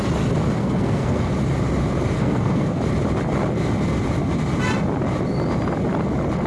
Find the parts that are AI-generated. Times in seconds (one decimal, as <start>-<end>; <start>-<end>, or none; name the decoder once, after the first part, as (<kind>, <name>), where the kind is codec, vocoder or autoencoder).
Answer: 0.6-1.3 (codec, SNAC); 2.2-2.8